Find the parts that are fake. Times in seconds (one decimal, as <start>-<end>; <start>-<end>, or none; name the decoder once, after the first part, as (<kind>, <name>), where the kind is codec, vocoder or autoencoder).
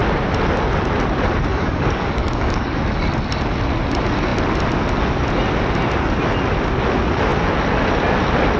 1.5-2.8 (codec, DAC)